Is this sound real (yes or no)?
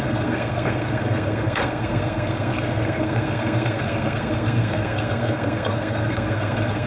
no